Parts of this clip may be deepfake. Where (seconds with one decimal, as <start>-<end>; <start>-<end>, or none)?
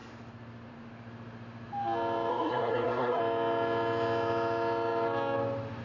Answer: 2.3-3.2